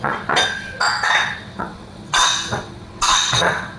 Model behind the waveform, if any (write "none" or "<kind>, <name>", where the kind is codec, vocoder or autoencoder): vocoder, WaveNeXt